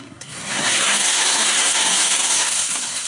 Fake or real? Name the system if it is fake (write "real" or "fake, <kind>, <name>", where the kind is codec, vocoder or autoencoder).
fake, codec, SNAC